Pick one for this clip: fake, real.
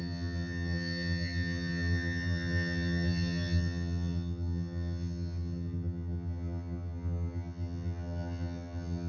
fake